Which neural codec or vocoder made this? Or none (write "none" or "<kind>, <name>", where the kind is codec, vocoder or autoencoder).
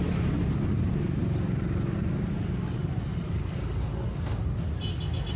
none